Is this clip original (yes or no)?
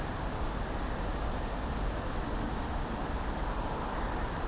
yes